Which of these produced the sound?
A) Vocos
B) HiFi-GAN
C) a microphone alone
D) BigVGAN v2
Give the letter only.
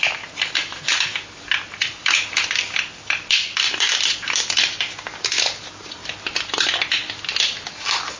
C